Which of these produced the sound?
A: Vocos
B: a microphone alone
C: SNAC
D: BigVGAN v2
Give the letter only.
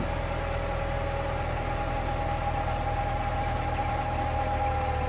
B